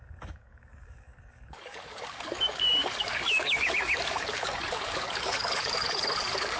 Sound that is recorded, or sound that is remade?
remade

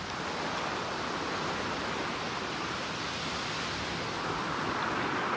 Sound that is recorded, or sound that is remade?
recorded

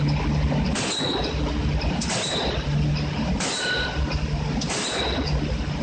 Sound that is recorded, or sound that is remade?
recorded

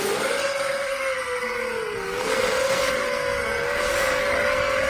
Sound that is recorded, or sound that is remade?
remade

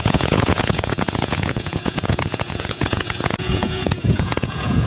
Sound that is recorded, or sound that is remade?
remade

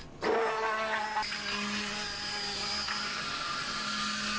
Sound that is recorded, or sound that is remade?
recorded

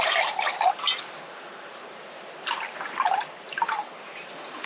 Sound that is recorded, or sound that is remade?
recorded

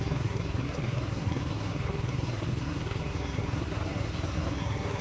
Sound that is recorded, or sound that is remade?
remade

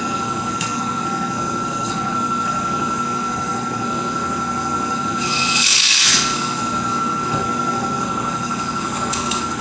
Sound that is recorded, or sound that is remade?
remade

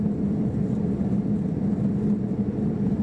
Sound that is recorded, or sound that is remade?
recorded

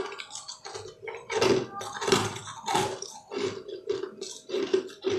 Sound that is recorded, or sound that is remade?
recorded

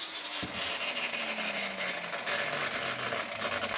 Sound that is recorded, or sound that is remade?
recorded